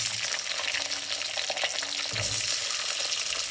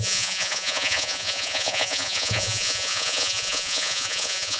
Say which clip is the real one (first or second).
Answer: first